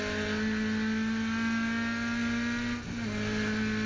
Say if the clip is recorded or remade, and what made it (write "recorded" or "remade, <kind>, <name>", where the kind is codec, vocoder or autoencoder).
recorded